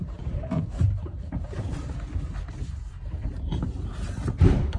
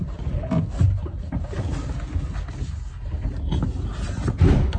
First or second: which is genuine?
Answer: second